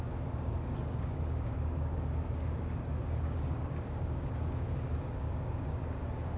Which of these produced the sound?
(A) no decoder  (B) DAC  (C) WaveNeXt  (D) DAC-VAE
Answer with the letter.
B